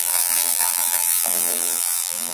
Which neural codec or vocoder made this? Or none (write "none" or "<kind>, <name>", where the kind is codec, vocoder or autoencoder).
vocoder, BigVGAN v2